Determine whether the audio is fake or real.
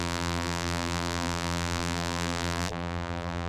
fake